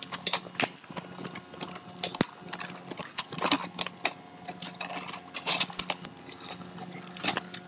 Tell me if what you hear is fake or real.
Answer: real